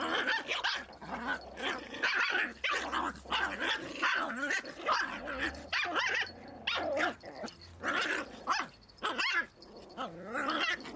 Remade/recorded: recorded